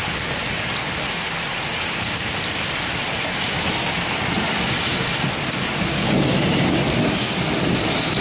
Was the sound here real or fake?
real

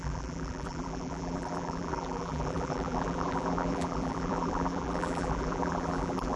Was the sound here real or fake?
fake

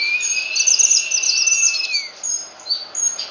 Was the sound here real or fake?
real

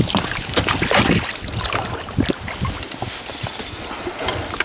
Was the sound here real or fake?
real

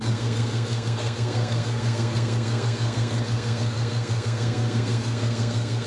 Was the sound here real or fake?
fake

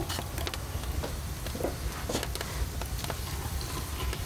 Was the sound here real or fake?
real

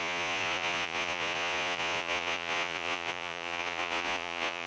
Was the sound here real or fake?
fake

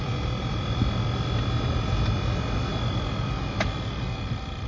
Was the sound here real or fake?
real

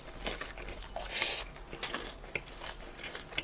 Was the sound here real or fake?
real